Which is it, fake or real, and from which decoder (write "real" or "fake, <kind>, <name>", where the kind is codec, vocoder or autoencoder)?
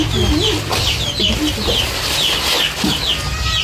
real